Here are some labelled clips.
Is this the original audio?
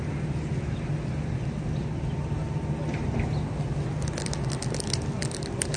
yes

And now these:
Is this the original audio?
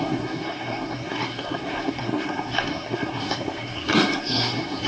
no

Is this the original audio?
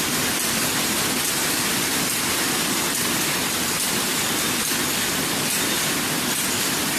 yes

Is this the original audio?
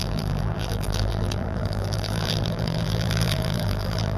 no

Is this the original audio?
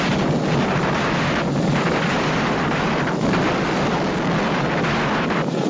yes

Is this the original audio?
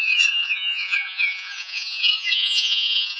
no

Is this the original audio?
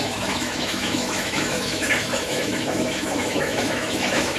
no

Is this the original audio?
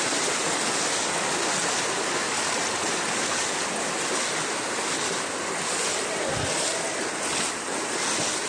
yes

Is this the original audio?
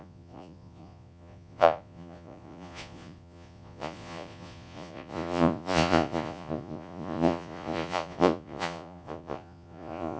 no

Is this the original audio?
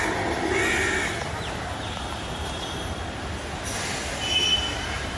yes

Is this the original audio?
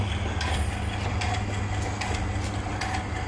yes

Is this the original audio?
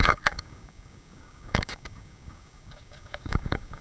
no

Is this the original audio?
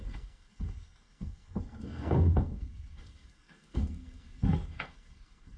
no